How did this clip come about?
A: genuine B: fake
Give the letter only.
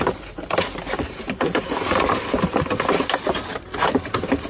A